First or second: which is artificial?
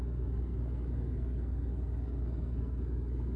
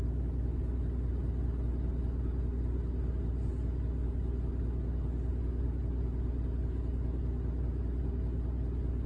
first